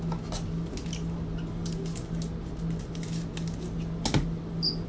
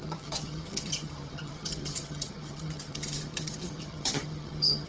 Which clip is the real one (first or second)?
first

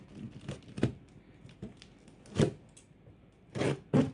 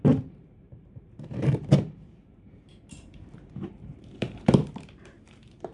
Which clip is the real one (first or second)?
first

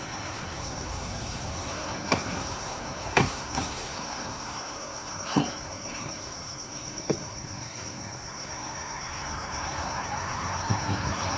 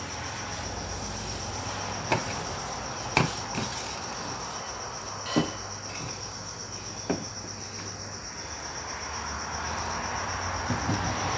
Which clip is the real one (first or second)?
second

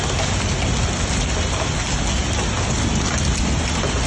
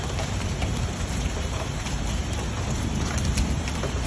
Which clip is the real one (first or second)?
first